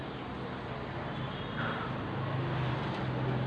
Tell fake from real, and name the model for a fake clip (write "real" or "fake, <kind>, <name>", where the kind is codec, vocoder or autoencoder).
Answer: real